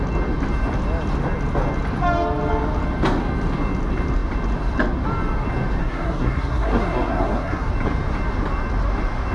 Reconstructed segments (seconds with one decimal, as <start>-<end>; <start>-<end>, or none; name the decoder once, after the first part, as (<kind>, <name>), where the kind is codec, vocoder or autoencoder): 5.8-7.7 (codec, SNAC)

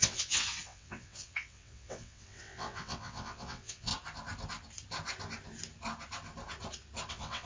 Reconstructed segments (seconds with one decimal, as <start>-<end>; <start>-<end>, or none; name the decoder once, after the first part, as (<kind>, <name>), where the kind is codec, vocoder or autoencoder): 0.0-3.9 (vocoder, WaveNeXt); 7.1-7.5

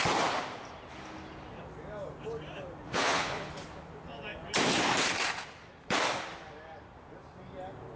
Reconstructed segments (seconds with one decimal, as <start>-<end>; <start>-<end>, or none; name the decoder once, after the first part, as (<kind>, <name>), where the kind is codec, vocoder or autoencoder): 2.8-3.5 (vocoder, Vocos)

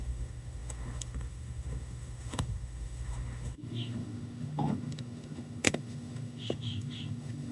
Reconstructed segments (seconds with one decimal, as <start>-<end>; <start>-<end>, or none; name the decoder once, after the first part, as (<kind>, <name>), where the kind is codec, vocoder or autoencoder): 0.0-7.5 (autoencoder, DAC-VAE)